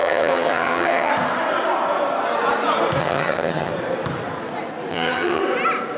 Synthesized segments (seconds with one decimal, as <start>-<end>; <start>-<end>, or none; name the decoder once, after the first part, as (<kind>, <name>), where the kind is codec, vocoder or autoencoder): 0.0-1.1 (vocoder, HiFi-GAN); 3.0-3.7; 4.9-5.4